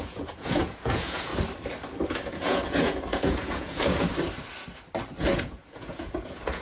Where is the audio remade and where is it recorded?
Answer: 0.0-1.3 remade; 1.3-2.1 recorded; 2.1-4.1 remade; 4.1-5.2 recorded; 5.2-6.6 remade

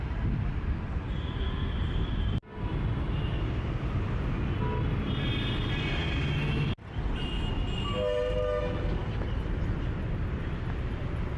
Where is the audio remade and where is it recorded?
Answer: 0.0-11.4 recorded